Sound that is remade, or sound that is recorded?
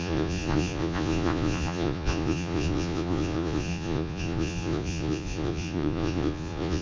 remade